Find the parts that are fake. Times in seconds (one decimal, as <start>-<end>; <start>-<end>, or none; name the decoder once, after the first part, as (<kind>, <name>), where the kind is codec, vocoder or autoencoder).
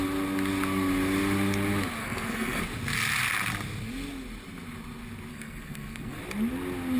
2.0-2.6 (codec, SNAC); 5.3-6.2